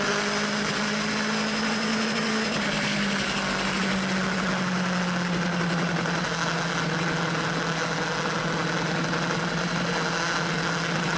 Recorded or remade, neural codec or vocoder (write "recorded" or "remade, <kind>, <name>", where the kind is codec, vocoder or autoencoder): recorded